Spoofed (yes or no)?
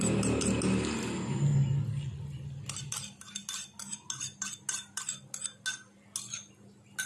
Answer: no